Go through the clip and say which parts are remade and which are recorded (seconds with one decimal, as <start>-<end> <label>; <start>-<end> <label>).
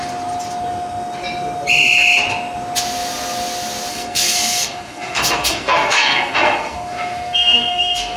0.0-3.9 recorded; 3.9-8.2 remade